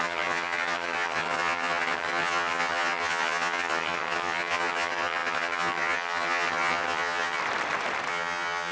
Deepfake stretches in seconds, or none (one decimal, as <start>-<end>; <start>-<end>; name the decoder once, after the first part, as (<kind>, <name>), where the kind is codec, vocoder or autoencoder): 0.0-7.4 (vocoder, HiFi-GAN); 8.1-8.7